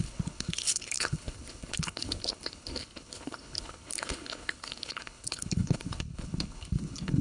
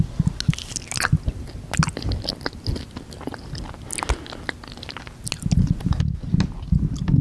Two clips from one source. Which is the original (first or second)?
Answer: second